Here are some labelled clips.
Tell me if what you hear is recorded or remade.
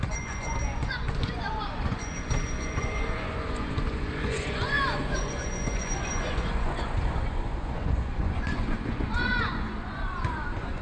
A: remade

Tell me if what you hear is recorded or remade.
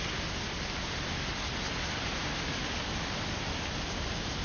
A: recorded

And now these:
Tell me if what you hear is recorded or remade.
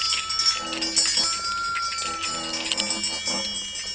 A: recorded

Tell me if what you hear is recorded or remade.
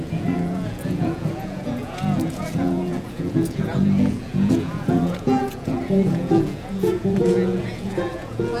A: remade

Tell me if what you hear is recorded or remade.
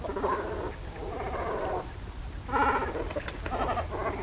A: recorded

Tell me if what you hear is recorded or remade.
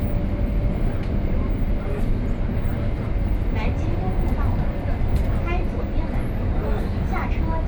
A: recorded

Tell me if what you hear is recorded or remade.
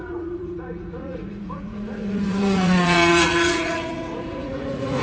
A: remade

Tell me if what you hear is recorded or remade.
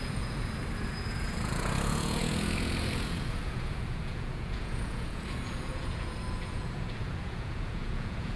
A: remade